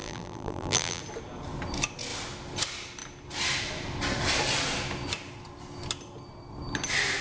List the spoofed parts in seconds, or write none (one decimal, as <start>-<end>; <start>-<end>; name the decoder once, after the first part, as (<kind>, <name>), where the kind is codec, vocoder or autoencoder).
0.0-1.0 (vocoder, BigVGAN v2)